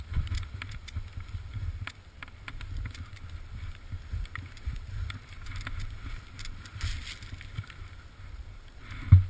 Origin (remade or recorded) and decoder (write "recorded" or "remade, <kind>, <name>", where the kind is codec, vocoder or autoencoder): recorded